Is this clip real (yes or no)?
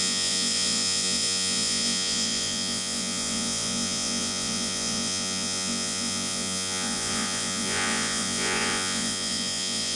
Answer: no